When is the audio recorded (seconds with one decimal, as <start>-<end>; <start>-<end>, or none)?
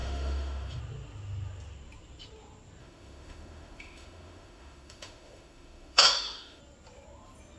0.8-2.8; 6.6-7.6